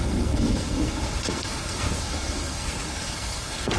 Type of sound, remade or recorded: remade